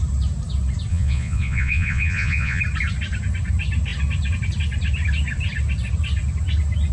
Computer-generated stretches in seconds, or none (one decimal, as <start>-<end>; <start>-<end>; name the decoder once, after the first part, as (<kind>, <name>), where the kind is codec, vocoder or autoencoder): 0.9-2.6 (vocoder, Vocos)